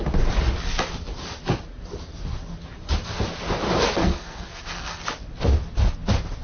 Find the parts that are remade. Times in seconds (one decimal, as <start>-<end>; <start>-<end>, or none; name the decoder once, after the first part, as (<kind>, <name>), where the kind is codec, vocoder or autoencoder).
4.0-5.0 (codec, SNAC)